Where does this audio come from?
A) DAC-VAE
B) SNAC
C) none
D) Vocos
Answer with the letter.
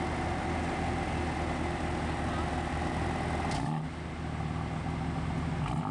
C